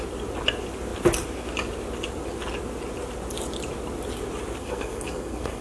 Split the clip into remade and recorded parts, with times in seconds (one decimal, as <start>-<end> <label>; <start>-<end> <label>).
0.0-4.6 recorded; 4.6-5.6 remade

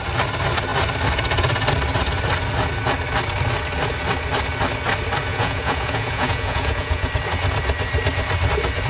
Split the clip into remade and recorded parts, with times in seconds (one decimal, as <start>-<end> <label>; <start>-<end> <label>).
0.0-5.3 recorded; 5.3-7.1 remade; 7.1-8.9 recorded

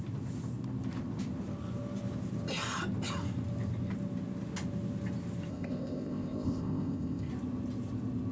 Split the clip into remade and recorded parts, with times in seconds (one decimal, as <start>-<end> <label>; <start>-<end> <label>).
0.0-5.5 recorded; 5.5-7.3 remade; 7.3-8.3 recorded

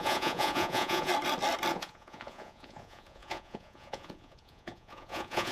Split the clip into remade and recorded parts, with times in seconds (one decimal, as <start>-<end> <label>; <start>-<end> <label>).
0.0-1.1 remade; 1.1-1.7 recorded; 1.7-5.5 remade

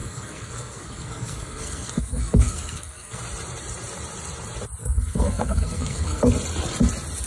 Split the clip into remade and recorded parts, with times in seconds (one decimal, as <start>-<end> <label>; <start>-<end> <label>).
0.0-3.2 remade; 3.2-4.8 recorded; 4.8-6.3 remade; 6.3-7.3 recorded